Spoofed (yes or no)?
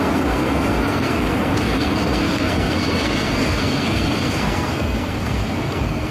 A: yes